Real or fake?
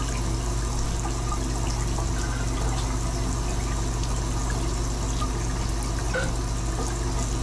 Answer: real